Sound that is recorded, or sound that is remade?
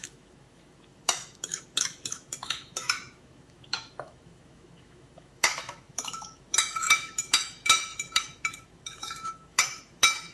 remade